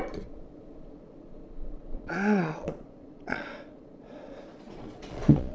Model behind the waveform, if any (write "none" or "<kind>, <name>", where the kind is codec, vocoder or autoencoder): vocoder, Vocos